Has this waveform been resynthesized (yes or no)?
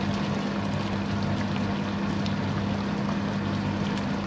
no